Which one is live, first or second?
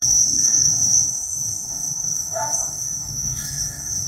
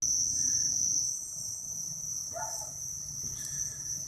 second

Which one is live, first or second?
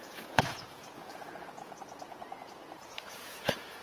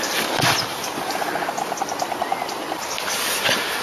second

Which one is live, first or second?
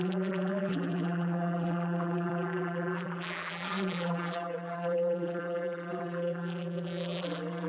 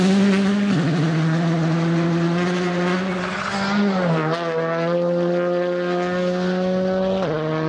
second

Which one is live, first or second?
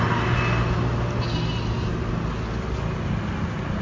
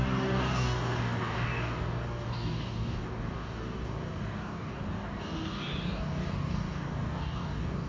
first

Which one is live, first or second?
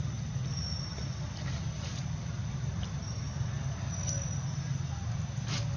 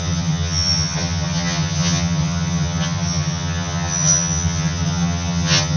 first